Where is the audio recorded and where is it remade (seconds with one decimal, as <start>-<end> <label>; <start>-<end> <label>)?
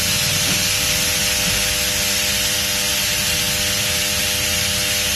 0.0-2.8 recorded; 2.8-3.4 remade; 3.4-5.2 recorded